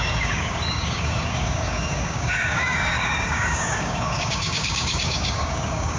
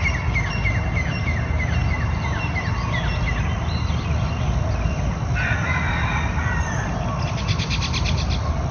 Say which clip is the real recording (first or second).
second